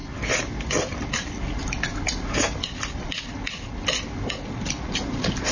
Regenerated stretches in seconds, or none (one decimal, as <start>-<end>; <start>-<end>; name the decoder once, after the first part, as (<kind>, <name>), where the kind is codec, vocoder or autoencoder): none